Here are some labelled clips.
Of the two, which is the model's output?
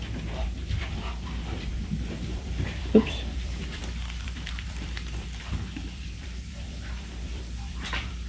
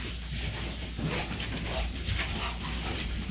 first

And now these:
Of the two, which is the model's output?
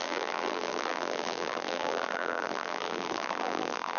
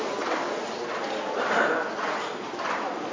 first